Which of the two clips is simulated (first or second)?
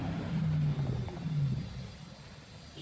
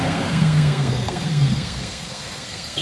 second